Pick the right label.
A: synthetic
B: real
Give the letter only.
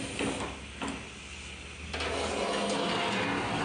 B